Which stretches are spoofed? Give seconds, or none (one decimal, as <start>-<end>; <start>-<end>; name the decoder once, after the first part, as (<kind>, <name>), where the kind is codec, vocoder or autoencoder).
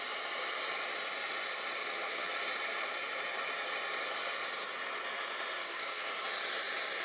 1.8-2.3 (vocoder, HiFi-GAN); 5.6-6.1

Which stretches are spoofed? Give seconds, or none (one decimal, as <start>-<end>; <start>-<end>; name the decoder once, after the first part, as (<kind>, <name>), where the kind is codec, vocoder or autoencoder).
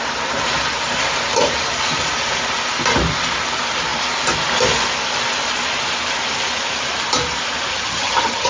7.7-8.5 (vocoder, HiFi-GAN)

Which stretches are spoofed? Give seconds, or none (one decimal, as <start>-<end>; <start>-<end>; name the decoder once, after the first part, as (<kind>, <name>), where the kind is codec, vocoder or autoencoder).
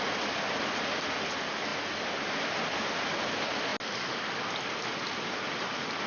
none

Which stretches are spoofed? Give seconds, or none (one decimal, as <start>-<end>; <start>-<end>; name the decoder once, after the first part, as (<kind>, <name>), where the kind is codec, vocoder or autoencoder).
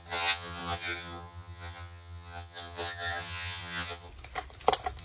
0.0-4.1 (vocoder, HiFi-GAN)